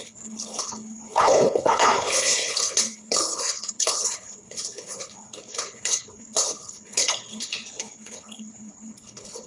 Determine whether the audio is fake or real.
fake